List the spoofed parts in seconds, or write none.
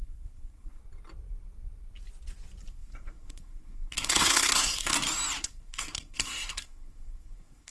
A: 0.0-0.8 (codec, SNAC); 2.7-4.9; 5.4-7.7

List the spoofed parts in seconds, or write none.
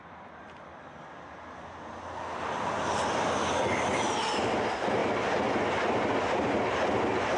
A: 5.0-7.4 (vocoder, BigVGAN v2)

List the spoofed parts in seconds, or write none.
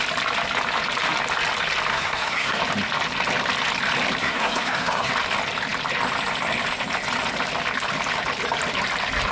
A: 1.9-2.6 (codec, SNAC); 4.2-5.1